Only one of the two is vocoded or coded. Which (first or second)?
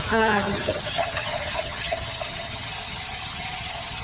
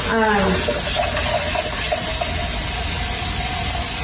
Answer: first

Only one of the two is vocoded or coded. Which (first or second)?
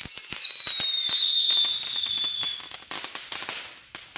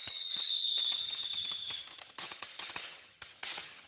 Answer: second